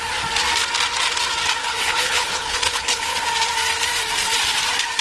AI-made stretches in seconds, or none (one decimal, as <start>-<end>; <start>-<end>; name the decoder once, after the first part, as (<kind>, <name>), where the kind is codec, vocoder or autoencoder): 1.6-3.2 (codec, HILCodec)